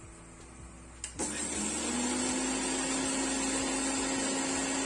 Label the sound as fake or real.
real